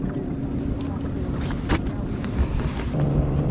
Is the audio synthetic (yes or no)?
yes